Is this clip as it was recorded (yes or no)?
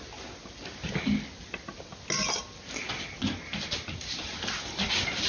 yes